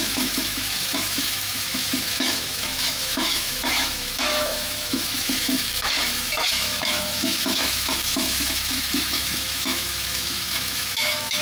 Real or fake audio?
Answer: fake